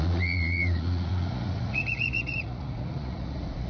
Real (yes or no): no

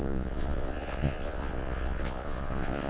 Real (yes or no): no